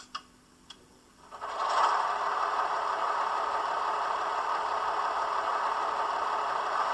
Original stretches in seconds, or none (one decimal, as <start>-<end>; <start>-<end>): 0.0-6.9